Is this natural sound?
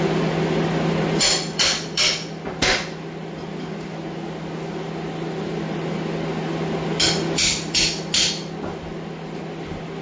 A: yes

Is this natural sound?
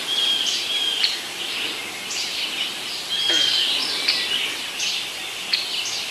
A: yes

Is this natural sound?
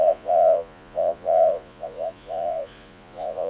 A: no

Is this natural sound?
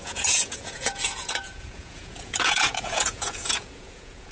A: no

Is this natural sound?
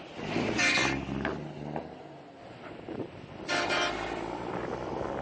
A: yes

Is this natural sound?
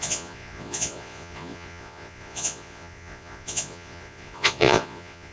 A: no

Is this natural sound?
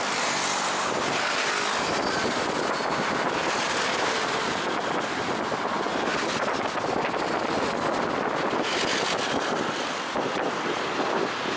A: yes